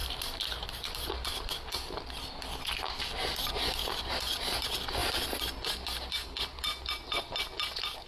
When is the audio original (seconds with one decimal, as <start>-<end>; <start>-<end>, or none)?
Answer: 1.5-8.1